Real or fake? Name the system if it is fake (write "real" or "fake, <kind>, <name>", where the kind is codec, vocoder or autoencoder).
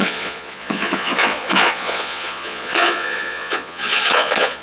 fake, vocoder, Vocos